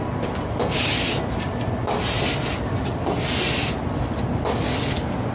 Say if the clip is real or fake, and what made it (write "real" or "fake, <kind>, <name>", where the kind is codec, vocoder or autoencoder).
real